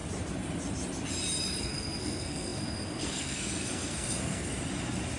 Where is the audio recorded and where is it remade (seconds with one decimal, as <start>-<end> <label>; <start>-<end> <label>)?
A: 0.0-1.6 recorded; 1.6-4.5 remade; 4.5-5.2 recorded